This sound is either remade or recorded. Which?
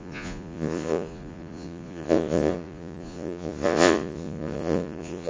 remade